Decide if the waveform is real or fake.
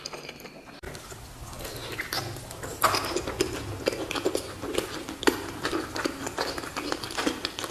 real